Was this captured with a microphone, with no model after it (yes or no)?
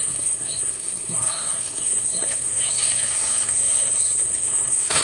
no